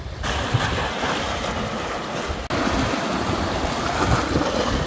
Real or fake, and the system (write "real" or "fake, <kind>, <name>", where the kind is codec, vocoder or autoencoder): real